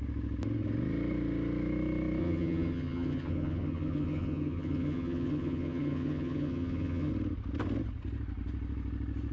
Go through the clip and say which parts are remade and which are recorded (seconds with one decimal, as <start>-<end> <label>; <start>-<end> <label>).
0.0-2.2 recorded; 2.2-7.1 remade; 7.1-9.3 recorded